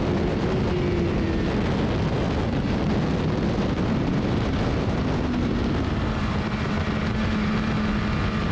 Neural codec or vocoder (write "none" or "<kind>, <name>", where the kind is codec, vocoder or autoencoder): none